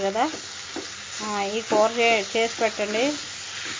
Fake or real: real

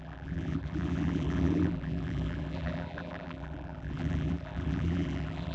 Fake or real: fake